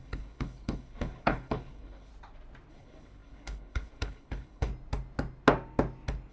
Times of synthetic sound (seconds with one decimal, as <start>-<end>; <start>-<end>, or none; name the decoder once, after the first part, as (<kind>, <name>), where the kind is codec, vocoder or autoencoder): 0.0-2.1 (codec, HILCodec); 2.7-4.7